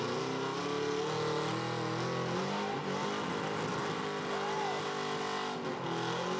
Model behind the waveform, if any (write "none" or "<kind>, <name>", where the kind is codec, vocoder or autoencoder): none